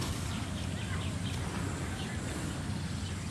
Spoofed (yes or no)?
no